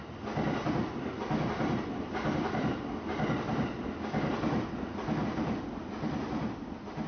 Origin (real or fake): real